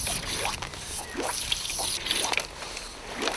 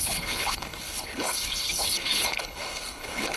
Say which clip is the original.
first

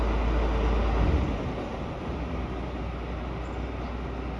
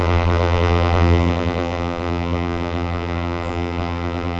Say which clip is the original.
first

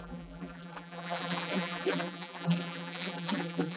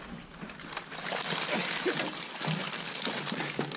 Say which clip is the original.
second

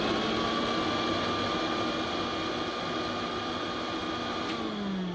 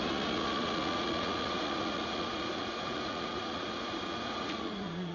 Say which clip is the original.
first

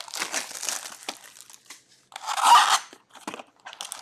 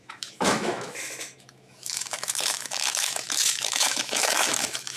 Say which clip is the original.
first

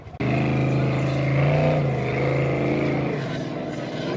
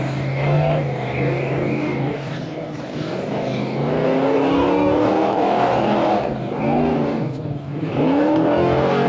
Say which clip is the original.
first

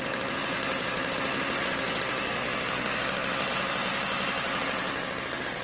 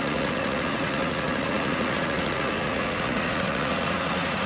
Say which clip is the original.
first